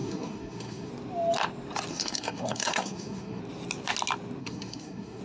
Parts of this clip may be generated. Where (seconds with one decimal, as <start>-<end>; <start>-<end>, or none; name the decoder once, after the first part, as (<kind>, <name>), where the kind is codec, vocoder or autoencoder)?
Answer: 0.0-0.9 (codec, SNAC); 1.9-3.4; 4.4-5.2